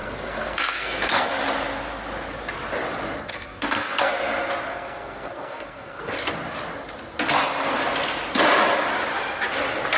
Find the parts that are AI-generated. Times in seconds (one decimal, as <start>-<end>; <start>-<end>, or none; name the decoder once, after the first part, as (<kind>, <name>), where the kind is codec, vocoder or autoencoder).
0.0-1.3 (codec, SNAC); 3.3-4.1; 4.7-6.1